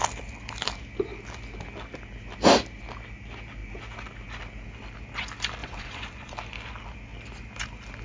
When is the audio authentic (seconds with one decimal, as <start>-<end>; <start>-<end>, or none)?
0.0-5.6; 6.3-8.0